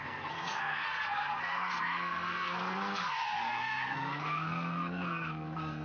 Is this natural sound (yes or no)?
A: no